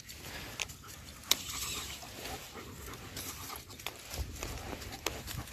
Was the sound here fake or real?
real